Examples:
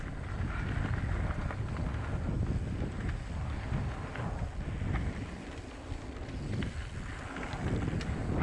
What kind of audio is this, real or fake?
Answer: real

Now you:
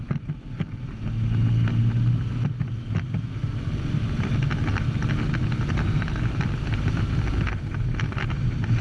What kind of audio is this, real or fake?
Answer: real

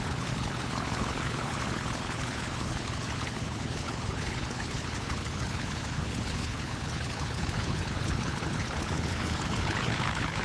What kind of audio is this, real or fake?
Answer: fake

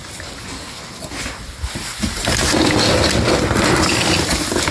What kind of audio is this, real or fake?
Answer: real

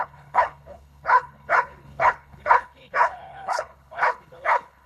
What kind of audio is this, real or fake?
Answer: fake